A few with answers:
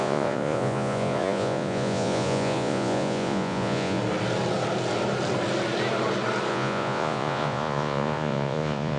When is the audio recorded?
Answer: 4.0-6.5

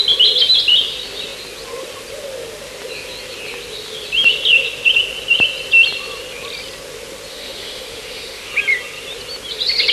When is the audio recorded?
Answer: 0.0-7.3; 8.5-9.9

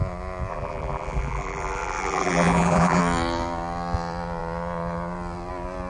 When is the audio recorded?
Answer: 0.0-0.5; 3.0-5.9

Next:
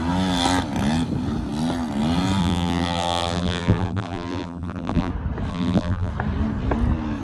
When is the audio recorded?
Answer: 0.0-2.4; 5.1-5.5; 6.1-7.2